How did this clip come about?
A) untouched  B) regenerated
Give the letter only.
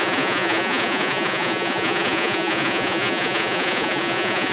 B